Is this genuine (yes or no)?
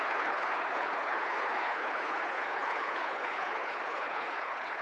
no